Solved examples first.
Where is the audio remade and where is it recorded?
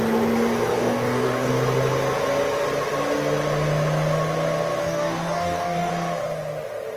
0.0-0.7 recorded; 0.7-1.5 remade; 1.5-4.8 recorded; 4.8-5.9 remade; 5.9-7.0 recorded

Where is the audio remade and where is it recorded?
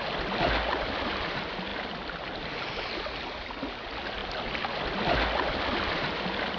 0.0-6.6 recorded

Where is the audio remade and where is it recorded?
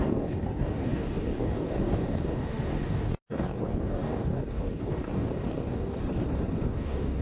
0.0-6.0 remade; 6.0-6.5 recorded; 6.5-7.2 remade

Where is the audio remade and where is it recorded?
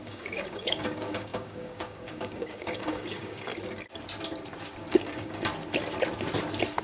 0.0-3.5 remade; 3.5-4.9 recorded; 4.9-5.5 remade; 5.5-6.8 recorded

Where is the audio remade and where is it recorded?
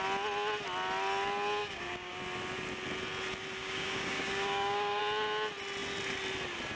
0.0-1.6 recorded; 1.6-2.2 remade; 2.2-3.6 recorded; 3.6-5.0 remade; 5.0-6.8 recorded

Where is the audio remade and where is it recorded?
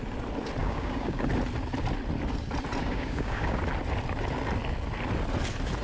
0.0-0.6 recorded; 0.6-1.3 remade; 1.3-2.8 recorded; 2.8-3.6 remade; 3.6-5.8 recorded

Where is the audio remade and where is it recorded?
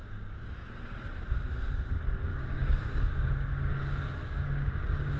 0.0-0.7 remade; 0.7-2.3 recorded; 2.3-3.7 remade; 3.7-4.2 recorded; 4.2-5.2 remade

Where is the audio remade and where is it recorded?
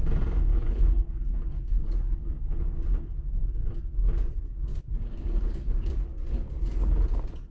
0.0-0.5 recorded; 0.5-1.7 remade; 1.7-4.7 recorded; 4.7-5.9 remade; 5.9-7.5 recorded